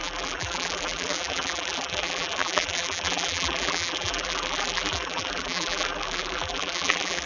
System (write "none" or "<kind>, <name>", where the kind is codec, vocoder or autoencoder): vocoder, BigVGAN v2